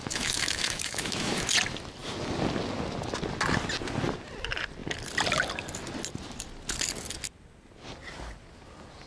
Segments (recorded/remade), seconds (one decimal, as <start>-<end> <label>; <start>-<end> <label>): 0.0-1.5 remade; 1.5-9.1 recorded